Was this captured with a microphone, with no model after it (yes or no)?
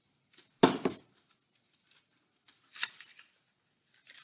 yes